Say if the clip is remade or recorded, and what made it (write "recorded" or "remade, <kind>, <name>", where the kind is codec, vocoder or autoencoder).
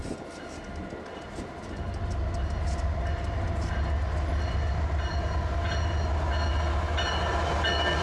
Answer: recorded